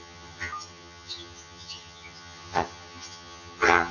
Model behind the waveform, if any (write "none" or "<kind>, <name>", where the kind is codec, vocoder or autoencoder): vocoder, HiFi-GAN